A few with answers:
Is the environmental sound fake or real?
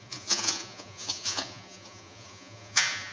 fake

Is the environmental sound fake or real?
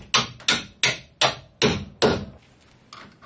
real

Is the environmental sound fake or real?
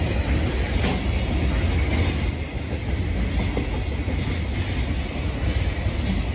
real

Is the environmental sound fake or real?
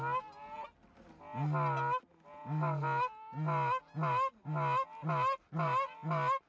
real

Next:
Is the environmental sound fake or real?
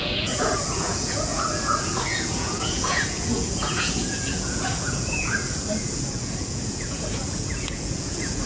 fake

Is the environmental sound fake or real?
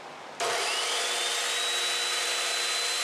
real